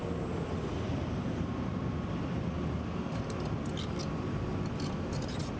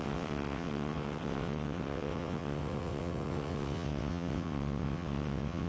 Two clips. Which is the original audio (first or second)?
first